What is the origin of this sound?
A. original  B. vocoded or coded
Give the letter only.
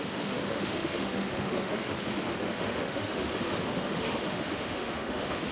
B